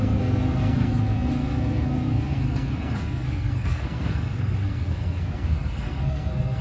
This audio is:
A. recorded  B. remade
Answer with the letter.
B